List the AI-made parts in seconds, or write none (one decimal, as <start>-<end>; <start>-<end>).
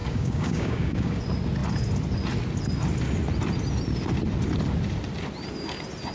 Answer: 0.0-1.2